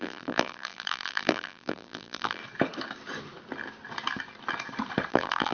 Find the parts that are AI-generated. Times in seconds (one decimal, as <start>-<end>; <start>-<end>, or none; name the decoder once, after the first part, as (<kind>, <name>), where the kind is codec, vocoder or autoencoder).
0.0-2.4 (vocoder, BigVGAN v2); 5.1-5.5